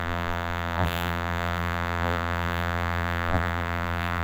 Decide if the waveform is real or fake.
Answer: fake